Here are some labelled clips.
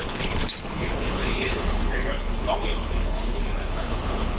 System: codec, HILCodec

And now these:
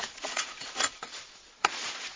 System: vocoder, Vocos